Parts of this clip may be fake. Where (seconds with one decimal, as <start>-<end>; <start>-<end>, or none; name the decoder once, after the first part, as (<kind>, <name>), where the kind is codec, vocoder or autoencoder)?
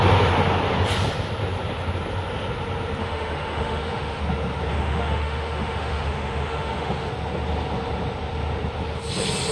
3.0-4.2 (autoencoder, DAC-VAE); 4.7-7.1